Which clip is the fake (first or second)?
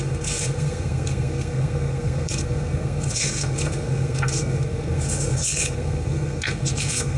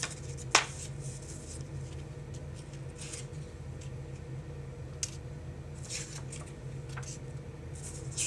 first